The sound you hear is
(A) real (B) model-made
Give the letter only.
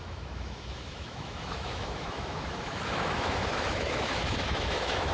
B